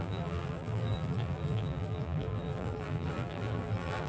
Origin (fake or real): fake